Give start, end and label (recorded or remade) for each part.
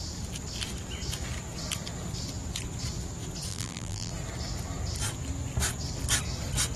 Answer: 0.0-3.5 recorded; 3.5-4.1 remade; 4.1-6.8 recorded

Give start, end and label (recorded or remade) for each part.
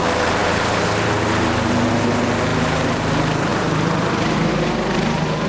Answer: 0.0-0.4 recorded; 0.4-1.9 remade; 1.9-2.5 recorded; 2.5-3.1 remade; 3.1-3.5 recorded; 3.5-4.5 remade; 4.5-5.5 recorded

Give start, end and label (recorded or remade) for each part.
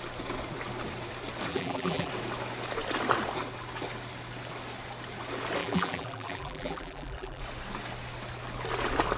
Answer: 0.0-1.5 recorded; 1.5-2.1 remade; 2.1-5.6 recorded; 5.6-7.4 remade; 7.4-9.2 recorded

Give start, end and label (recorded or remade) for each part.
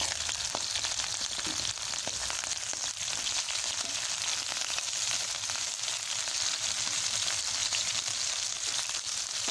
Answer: 0.0-4.6 recorded; 4.6-5.3 remade; 5.3-7.6 recorded; 7.6-8.2 remade; 8.2-9.5 recorded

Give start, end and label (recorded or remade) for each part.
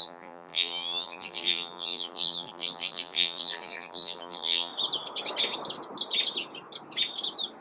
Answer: 0.0-4.7 remade; 4.7-7.6 recorded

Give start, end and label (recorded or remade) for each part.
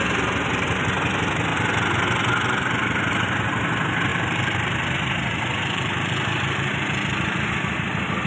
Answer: 0.0-4.1 recorded; 4.1-7.5 remade; 7.5-8.3 recorded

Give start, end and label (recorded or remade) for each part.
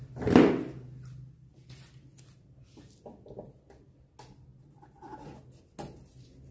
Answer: 0.0-6.5 recorded